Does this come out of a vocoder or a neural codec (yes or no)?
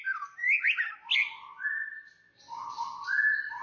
no